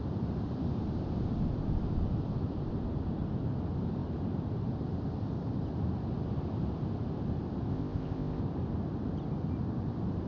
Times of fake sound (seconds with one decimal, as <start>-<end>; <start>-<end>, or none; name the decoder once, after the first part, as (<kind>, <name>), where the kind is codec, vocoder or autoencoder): 7.7-8.4 (codec, ZipCodec)